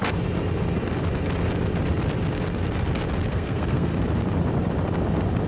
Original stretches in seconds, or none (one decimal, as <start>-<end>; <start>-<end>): 0.0-3.3; 3.9-5.5